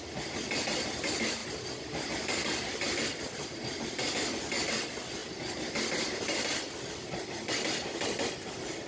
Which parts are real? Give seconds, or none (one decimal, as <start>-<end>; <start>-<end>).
0.0-8.9